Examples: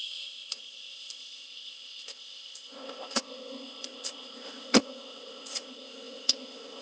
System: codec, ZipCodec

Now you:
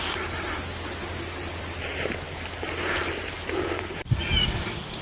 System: none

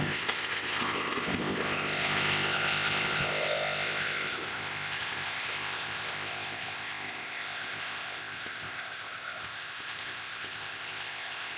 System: codec, ZipCodec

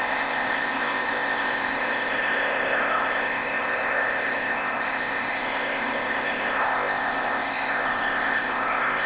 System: codec, ZipCodec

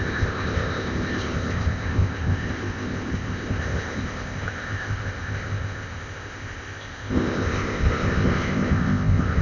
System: codec, ZipCodec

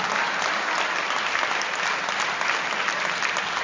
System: none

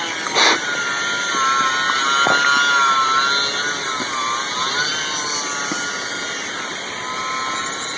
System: none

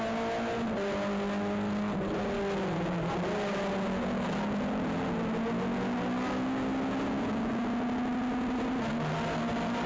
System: none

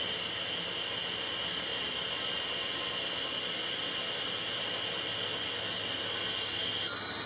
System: none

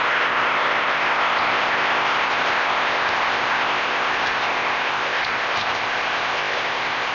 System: codec, ZipCodec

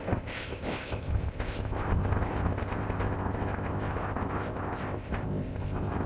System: codec, ZipCodec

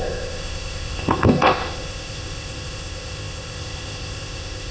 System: codec, ZipCodec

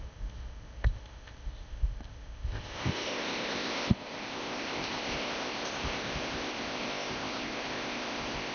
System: codec, ZipCodec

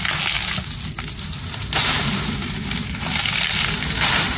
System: none